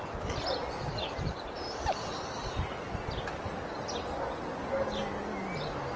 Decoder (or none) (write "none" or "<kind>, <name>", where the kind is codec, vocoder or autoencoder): none